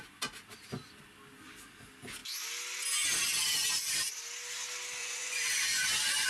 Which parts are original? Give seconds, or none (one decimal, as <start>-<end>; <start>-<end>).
0.0-5.0